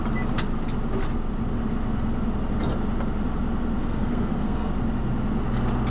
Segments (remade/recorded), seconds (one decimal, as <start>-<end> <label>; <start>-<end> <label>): 0.0-3.8 recorded; 3.8-4.7 remade; 4.7-5.9 recorded